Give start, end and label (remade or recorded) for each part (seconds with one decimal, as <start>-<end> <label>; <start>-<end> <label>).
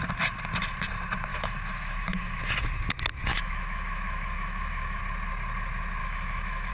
0.0-1.3 recorded; 1.3-2.4 remade; 2.4-3.3 recorded; 3.3-5.0 remade; 5.0-6.0 recorded; 6.0-6.7 remade